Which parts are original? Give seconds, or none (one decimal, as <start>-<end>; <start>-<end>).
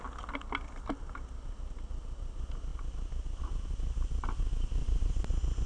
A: 0.0-4.8; 5.3-5.7